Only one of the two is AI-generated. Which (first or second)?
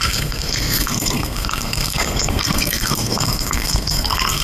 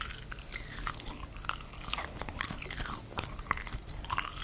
first